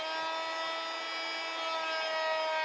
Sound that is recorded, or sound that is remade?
recorded